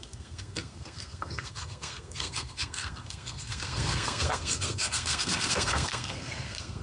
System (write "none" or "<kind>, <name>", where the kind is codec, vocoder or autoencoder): codec, SNAC